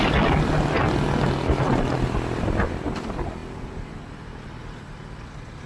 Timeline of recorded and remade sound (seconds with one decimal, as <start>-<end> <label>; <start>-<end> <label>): 0.0-5.7 recorded